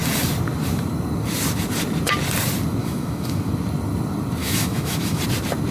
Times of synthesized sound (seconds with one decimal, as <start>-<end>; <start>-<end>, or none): 2.8-3.5; 4.4-5.2